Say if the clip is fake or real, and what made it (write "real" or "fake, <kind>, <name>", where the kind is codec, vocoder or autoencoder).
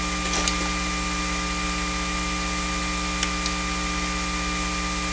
real